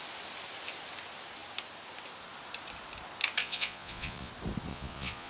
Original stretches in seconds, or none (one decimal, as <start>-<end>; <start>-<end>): 0.0-3.4; 4.3-4.7

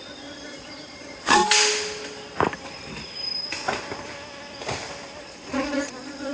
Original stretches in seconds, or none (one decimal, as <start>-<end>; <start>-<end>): 1.4-5.2

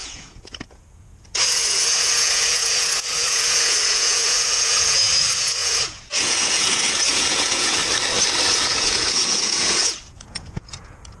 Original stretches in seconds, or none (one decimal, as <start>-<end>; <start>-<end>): 7.8-8.5